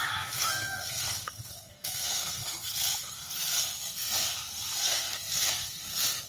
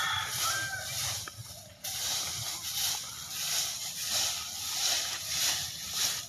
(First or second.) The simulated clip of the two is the first